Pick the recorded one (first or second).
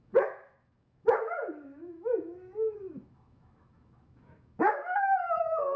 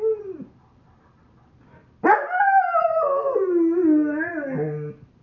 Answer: second